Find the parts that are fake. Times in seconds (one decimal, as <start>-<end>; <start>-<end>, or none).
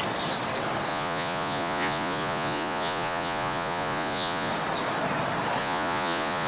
0.9-4.5; 5.6-6.5